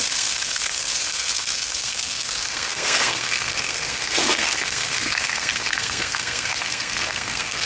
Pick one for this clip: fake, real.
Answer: fake